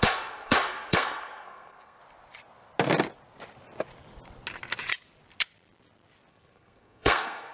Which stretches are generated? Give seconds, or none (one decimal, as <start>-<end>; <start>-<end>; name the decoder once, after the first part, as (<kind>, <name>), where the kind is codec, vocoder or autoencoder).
0.0-2.0 (codec, SNAC); 6.3-7.5